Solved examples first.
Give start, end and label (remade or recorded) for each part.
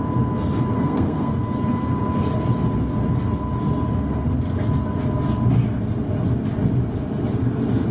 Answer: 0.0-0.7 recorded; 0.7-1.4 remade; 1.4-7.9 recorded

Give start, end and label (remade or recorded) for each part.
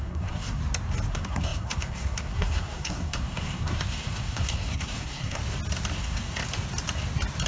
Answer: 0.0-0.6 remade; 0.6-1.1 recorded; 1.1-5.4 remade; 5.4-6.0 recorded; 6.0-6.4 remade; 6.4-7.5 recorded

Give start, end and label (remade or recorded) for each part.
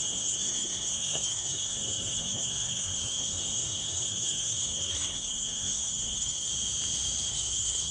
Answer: 0.0-6.5 remade; 6.5-7.3 recorded; 7.3-7.9 remade